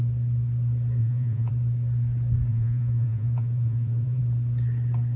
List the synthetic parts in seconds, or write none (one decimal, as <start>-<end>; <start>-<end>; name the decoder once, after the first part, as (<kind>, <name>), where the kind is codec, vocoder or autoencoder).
1.0-1.5 (vocoder, Vocos); 2.5-4.2